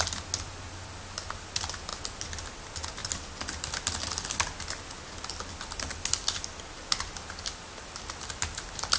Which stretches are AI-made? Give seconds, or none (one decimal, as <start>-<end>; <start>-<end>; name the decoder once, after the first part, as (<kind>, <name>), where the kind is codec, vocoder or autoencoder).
none

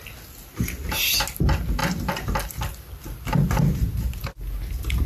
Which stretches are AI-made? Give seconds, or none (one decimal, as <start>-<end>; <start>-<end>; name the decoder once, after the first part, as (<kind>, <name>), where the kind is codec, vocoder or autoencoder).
1.8-5.1 (vocoder, BigVGAN v2)

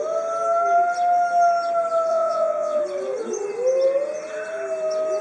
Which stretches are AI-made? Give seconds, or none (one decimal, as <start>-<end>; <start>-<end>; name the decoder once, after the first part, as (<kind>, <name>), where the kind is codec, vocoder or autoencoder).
2.1-2.8 (vocoder, WaveNeXt)

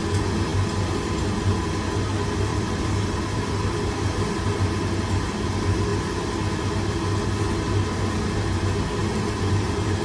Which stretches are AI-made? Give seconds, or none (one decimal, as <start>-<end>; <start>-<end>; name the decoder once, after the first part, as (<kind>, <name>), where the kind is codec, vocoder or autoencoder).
2.5-5.1 (vocoder, BigVGAN v2)

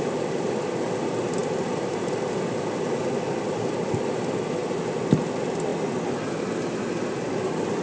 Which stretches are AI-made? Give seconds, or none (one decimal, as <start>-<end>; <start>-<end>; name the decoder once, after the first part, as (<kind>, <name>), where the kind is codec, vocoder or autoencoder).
none